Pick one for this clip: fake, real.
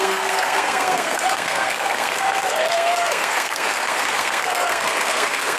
fake